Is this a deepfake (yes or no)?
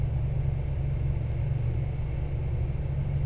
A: no